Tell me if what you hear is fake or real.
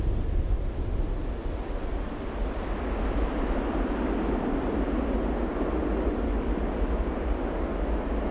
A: real